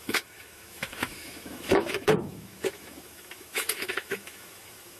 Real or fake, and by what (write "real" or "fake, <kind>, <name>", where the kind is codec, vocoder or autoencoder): fake, autoencoder, DAC-VAE